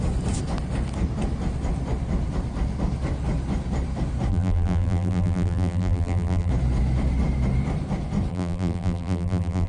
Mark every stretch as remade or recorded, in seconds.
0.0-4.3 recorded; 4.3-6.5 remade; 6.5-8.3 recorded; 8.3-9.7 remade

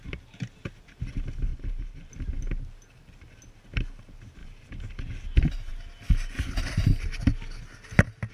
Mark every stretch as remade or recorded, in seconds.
0.0-1.5 recorded; 1.5-2.1 remade; 2.1-4.4 recorded; 4.4-5.0 remade; 5.0-8.3 recorded

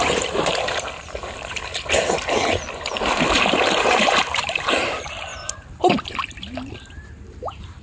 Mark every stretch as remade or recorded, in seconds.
0.0-1.7 remade; 1.7-3.3 recorded; 3.3-5.3 remade; 5.3-6.7 recorded; 6.7-7.8 remade

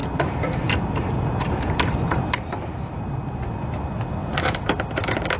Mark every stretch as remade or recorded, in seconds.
0.0-3.0 remade; 3.0-4.2 recorded; 4.2-5.4 remade

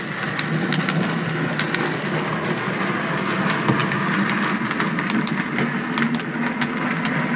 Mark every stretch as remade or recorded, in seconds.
0.0-7.4 recorded